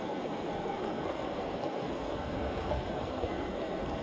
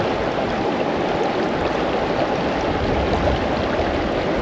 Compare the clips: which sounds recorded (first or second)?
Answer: second